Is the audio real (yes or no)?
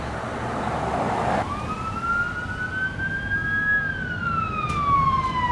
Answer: yes